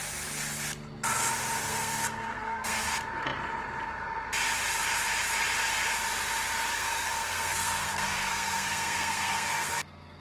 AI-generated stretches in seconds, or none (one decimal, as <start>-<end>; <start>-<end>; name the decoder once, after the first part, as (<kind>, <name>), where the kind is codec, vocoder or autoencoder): 1.7-2.8 (codec, SNAC); 6.7-10.2